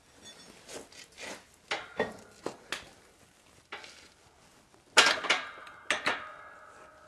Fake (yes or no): no